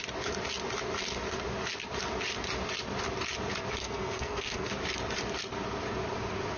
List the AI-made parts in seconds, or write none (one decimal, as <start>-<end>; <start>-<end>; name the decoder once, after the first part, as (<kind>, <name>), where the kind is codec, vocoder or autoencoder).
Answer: 3.8-4.7 (codec, SNAC)